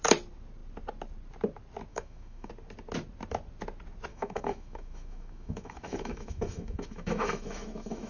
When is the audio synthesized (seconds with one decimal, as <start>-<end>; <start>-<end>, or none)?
1.9-2.5; 4.1-8.1